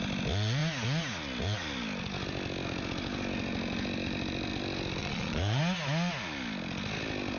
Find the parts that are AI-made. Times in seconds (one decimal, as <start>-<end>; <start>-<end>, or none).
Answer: 5.0-5.6